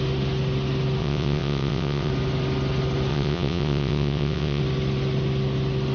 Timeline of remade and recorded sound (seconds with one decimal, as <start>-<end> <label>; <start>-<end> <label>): 0.0-1.0 recorded; 1.0-2.1 remade; 2.1-3.1 recorded; 3.1-4.6 remade; 4.6-5.9 recorded